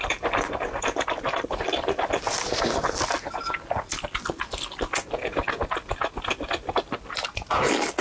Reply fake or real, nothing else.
real